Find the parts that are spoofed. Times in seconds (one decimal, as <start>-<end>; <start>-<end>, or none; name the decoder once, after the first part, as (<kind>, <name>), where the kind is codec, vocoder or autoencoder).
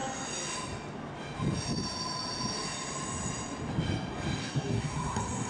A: 4.4-5.5 (codec, SNAC)